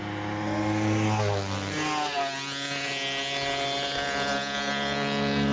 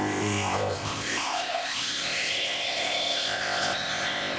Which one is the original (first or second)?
first